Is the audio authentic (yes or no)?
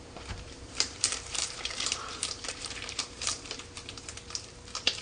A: no